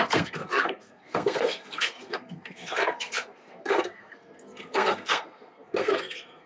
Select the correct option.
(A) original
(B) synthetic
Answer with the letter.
B